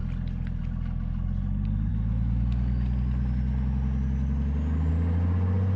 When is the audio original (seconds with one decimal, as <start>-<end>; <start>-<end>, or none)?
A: 0.0-5.8